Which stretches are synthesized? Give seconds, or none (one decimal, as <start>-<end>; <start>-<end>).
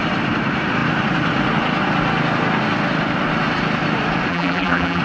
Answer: 4.3-5.0